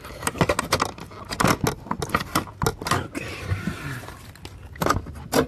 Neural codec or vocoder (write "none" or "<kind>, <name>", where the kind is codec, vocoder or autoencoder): none